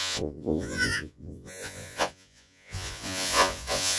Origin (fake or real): fake